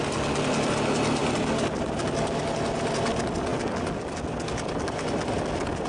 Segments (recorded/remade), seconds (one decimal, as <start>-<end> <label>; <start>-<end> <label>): 0.0-1.2 recorded; 1.2-2.4 remade; 2.4-5.9 recorded